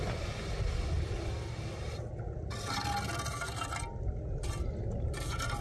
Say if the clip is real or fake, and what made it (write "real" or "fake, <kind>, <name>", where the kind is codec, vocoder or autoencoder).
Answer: real